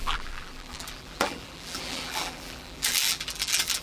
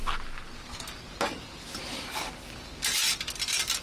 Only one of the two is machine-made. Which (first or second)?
first